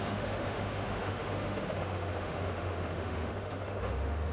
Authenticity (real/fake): fake